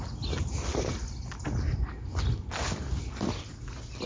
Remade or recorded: recorded